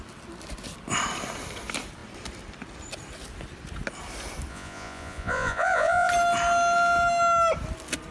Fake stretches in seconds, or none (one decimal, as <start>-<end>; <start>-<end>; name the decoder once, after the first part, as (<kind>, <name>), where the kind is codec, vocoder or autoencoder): 4.5-6.1 (vocoder, Vocos)